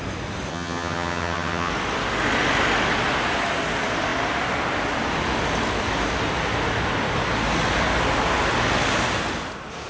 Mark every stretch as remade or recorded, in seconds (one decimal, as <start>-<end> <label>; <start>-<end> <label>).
0.0-0.5 recorded; 0.5-1.7 remade; 1.7-9.9 recorded